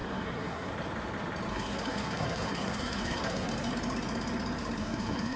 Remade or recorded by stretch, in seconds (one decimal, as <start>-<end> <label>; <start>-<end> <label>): 0.0-0.7 remade; 0.7-1.5 recorded; 1.5-3.5 remade; 3.5-4.8 recorded; 4.8-5.4 remade